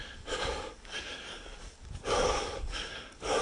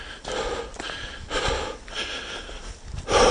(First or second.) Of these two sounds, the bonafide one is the second